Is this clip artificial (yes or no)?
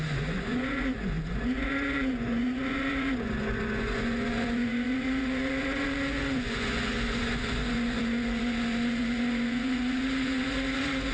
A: yes